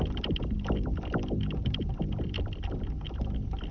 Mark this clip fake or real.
real